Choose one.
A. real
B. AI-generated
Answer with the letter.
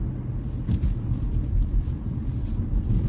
A